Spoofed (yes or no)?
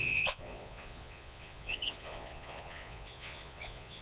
yes